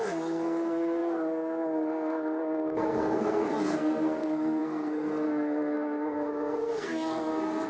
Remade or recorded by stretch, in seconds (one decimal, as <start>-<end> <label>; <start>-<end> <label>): 0.0-7.7 remade